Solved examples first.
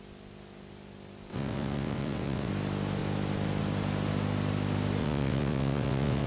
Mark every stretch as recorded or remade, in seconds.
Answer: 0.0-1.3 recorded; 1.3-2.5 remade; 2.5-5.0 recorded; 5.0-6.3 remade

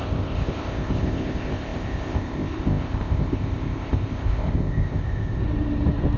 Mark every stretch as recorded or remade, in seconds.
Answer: 0.0-5.4 remade; 5.4-6.2 recorded

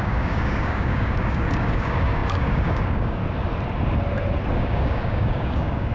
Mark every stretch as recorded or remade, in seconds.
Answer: 0.0-3.2 remade; 3.2-4.5 recorded; 4.5-5.9 remade

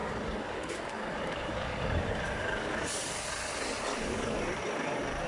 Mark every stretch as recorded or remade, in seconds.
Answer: 0.0-3.2 remade; 3.2-3.9 recorded; 3.9-4.6 remade; 4.6-5.3 recorded

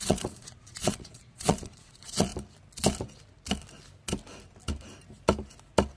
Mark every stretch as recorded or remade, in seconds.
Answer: 0.0-2.3 remade; 2.3-6.0 recorded

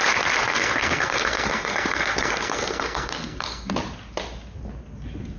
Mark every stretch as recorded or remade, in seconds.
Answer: 0.0-0.5 recorded; 0.5-3.7 remade; 3.7-5.4 recorded

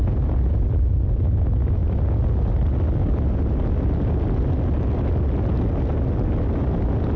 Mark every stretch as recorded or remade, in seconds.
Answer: 0.0-7.2 recorded